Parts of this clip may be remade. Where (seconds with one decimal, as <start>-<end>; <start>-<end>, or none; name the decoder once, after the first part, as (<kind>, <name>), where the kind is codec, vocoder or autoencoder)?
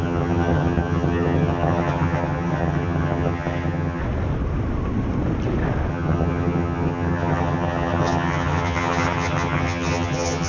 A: 0.0-4.0 (vocoder, HiFi-GAN); 5.9-10.5